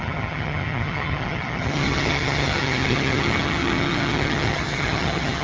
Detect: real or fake fake